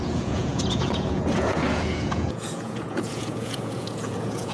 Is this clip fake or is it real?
fake